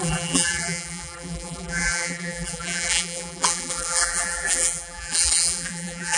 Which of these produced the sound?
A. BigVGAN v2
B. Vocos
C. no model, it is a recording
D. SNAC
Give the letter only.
A